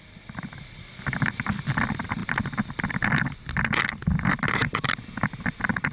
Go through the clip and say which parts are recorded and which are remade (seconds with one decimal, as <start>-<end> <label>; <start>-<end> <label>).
0.0-5.9 recorded